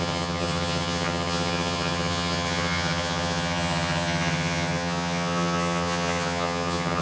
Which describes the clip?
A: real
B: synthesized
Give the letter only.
B